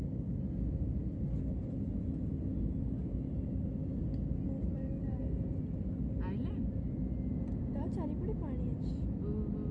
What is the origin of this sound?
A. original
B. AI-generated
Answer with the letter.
A